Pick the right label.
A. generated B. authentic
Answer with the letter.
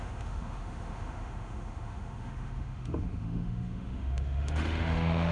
A